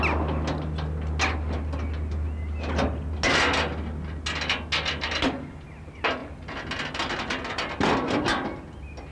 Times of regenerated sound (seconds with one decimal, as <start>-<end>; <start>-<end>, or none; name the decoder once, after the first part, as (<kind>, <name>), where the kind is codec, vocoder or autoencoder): none